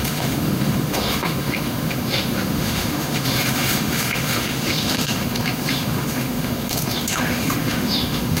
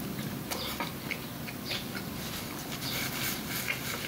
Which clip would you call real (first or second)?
second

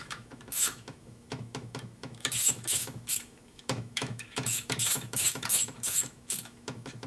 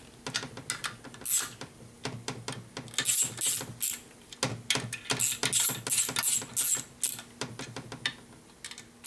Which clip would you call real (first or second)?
second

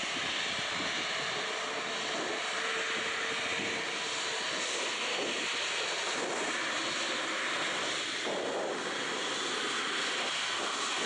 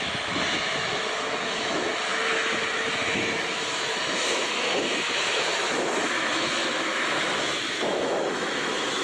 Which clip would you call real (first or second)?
first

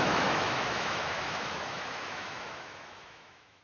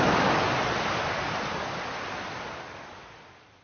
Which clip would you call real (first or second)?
second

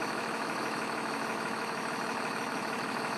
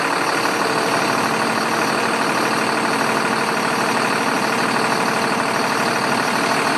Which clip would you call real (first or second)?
second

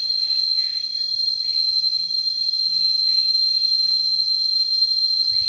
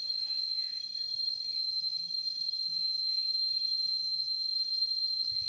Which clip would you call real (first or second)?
first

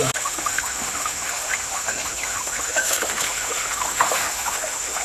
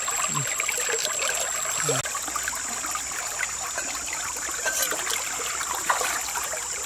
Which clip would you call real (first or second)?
second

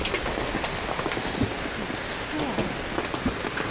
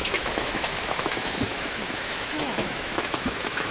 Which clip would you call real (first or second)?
first